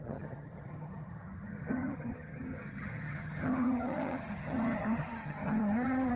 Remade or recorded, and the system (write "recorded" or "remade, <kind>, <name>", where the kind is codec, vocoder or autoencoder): remade, vocoder, HiFi-GAN